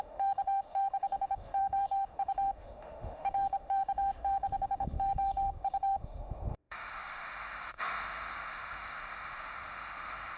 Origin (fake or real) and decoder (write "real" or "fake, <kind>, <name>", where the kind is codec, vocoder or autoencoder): fake, autoencoder, DAC-VAE